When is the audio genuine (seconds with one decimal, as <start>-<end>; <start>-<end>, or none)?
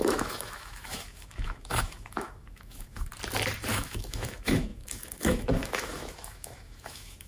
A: 3.1-3.7